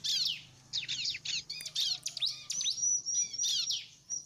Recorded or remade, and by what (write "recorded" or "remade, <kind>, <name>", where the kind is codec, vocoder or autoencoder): recorded